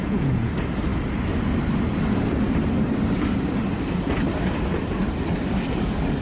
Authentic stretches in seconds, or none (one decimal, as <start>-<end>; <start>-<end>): 0.5-6.2